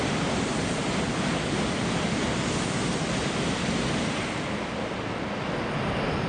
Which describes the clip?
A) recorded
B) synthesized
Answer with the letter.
A